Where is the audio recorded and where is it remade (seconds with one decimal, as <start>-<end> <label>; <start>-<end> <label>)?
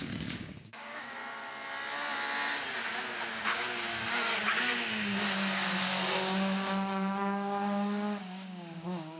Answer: 0.0-1.2 remade; 1.2-3.3 recorded; 3.3-9.2 remade